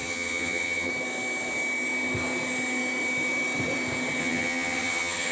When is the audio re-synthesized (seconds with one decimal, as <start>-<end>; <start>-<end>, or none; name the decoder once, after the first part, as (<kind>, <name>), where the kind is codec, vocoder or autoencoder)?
0.0-0.9 (vocoder, HiFi-GAN); 4.2-5.3